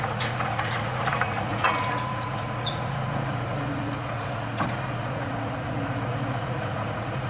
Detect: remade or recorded remade